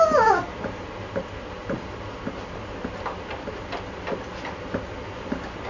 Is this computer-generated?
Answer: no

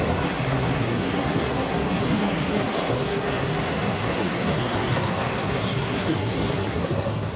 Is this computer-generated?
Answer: yes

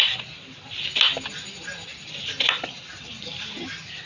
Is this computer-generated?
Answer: no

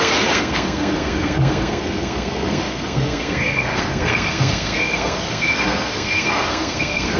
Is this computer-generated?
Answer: yes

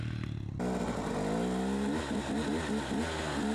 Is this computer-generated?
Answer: no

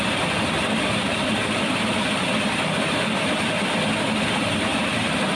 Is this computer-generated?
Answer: no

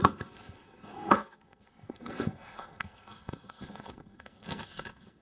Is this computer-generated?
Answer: yes